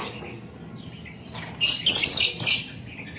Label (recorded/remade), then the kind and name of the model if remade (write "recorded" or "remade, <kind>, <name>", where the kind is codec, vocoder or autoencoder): recorded